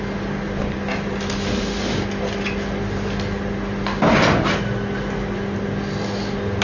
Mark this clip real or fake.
real